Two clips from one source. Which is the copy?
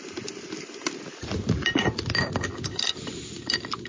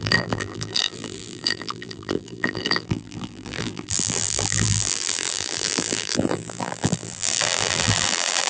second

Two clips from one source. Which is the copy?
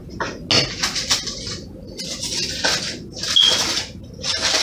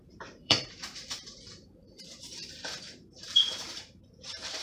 second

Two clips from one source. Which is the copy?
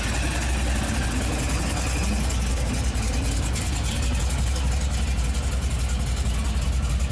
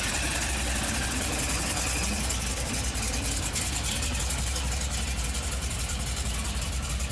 second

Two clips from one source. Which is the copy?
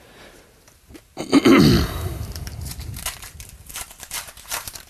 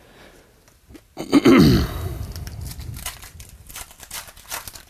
first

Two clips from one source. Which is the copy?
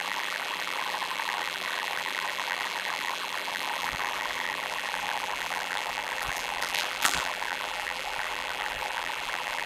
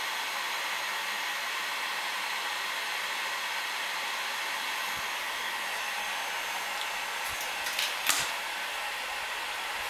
first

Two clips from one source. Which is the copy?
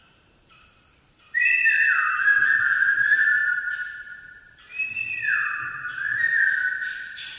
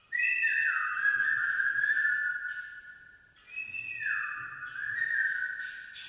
first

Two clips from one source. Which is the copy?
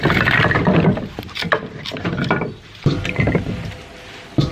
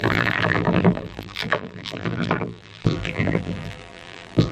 second